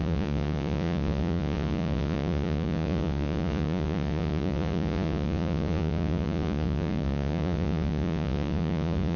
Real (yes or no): no